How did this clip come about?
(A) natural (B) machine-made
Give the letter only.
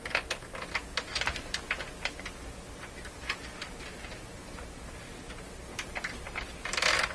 A